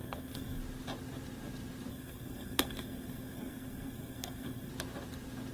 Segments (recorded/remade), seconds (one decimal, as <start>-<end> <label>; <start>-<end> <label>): 0.0-0.6 remade; 0.6-1.9 recorded; 1.9-4.7 remade; 4.7-5.5 recorded